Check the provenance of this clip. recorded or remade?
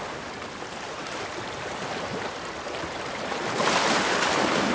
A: recorded